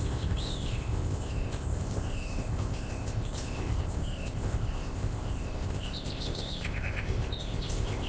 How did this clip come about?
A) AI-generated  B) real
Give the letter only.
A